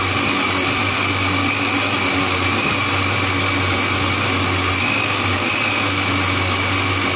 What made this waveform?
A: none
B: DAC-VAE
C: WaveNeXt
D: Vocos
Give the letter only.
A